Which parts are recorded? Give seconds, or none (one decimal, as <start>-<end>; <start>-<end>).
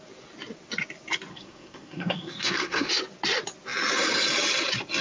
0.0-1.3; 2.9-5.0